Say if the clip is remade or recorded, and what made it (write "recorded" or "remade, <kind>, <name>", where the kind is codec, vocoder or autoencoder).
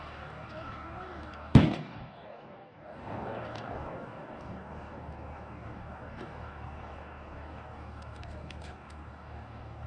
remade, codec, DAC